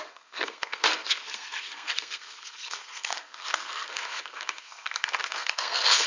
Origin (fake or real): fake